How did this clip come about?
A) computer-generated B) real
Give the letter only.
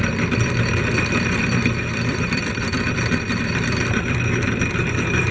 A